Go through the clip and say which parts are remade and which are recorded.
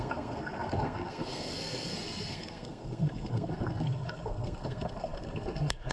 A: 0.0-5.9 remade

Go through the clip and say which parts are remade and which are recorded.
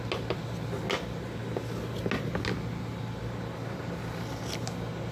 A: 0.0-5.1 recorded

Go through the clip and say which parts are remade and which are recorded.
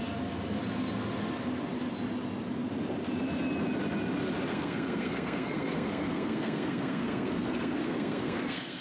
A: 0.0-4.5 recorded; 4.5-8.8 remade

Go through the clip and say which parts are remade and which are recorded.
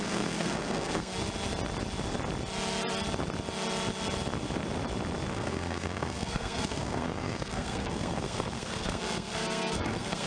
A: 0.0-1.1 remade; 1.1-5.3 recorded; 5.3-10.3 remade